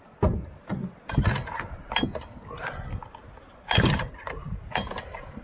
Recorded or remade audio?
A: recorded